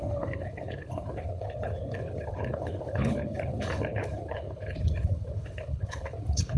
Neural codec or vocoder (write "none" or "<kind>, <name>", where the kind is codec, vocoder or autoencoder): codec, HILCodec